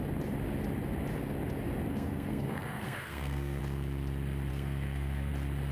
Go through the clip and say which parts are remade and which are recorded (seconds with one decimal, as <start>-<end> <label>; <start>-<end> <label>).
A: 0.0-1.9 recorded; 1.9-3.6 remade; 3.6-4.5 recorded; 4.5-5.3 remade; 5.3-5.7 recorded